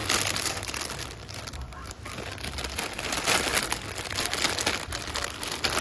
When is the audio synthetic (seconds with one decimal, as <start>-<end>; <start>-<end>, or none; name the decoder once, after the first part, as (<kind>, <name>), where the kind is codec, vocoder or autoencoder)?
none